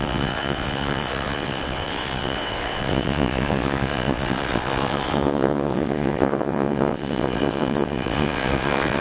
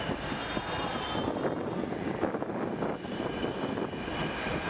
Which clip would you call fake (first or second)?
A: first